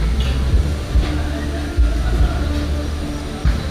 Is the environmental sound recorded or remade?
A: recorded